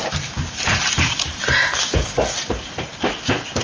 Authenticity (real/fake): fake